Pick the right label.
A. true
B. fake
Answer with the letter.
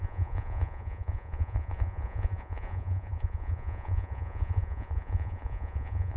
B